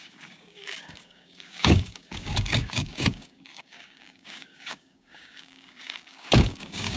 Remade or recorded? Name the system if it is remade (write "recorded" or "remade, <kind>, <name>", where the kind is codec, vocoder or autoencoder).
remade, codec, DAC